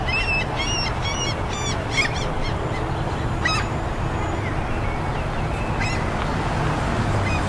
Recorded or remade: recorded